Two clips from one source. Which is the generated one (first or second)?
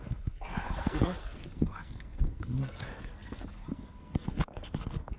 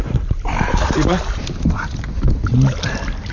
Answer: first